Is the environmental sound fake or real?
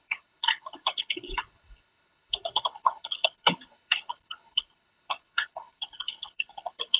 fake